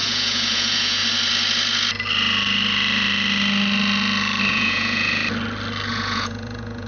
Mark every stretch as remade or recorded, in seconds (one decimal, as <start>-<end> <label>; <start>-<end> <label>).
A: 0.0-1.0 remade; 1.0-4.5 recorded; 4.5-5.2 remade; 5.2-5.9 recorded; 5.9-6.9 remade